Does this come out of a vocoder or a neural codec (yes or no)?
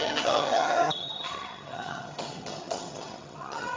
yes